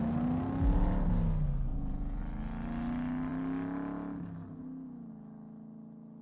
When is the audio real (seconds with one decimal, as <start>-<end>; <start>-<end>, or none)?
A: 0.0-1.7; 2.2-6.2